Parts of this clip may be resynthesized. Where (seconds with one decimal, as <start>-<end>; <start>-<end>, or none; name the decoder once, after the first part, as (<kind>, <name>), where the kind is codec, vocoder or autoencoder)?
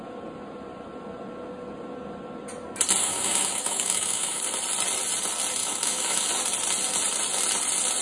3.0-4.4 (autoencoder, DAC-VAE); 5.6-6.3